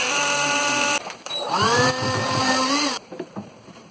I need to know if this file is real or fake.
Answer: fake